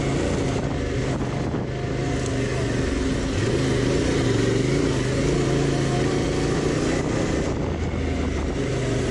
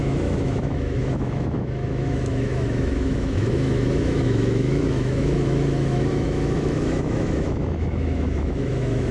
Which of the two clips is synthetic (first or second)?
second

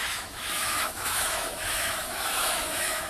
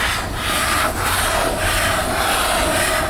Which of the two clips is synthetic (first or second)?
first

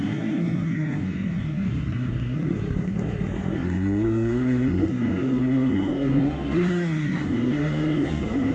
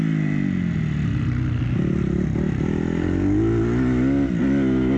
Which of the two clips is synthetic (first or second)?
first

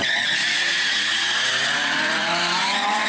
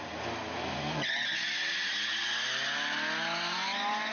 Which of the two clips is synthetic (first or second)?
first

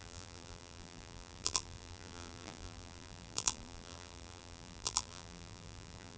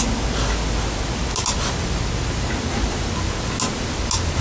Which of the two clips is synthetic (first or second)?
first